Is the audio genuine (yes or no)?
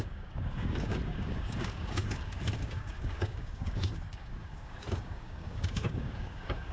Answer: no